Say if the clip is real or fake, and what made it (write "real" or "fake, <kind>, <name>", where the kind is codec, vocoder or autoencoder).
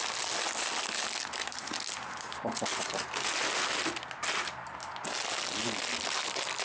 real